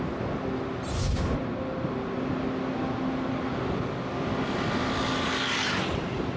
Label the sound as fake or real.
real